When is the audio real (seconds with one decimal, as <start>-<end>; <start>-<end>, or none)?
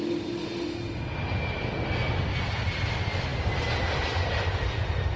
0.0-5.2